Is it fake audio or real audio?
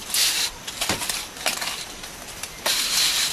real